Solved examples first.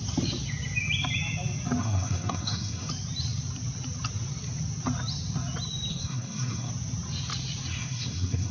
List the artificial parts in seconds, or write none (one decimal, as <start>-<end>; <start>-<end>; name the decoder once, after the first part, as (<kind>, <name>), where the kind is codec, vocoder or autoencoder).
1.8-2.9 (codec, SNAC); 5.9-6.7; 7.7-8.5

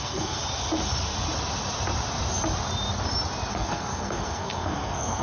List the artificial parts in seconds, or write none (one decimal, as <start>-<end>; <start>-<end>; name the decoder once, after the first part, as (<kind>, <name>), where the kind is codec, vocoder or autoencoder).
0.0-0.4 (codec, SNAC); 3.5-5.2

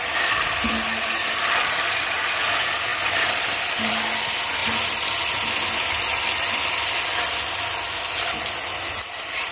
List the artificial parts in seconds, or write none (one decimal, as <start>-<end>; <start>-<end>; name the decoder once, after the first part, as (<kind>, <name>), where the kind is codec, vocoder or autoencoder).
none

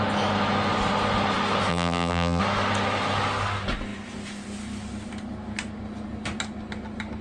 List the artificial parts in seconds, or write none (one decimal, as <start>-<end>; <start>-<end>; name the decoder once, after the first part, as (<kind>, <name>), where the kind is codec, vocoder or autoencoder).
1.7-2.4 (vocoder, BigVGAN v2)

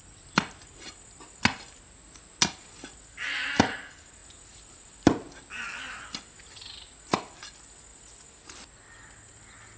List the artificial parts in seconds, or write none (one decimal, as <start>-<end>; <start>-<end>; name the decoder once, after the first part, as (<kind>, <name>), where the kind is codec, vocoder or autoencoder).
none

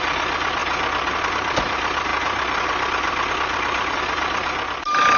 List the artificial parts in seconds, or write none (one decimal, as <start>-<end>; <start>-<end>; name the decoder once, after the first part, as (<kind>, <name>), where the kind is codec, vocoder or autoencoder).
none

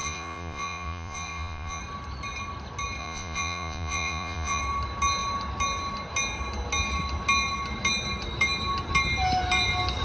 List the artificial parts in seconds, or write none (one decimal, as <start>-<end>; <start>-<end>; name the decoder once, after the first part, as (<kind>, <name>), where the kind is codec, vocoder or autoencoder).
0.0-1.8 (vocoder, Vocos); 3.0-4.6

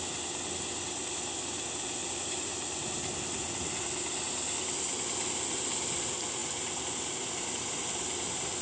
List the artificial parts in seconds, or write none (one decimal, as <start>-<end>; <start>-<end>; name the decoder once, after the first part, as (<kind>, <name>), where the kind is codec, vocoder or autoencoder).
none